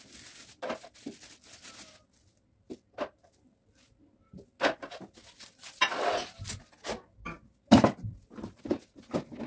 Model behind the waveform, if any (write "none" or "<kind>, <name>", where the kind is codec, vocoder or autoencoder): none